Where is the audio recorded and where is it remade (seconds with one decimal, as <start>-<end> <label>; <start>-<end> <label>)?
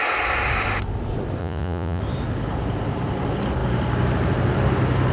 0.0-1.4 recorded; 1.4-2.0 remade; 2.0-5.1 recorded